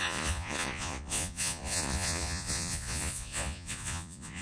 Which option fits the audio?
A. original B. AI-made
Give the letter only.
B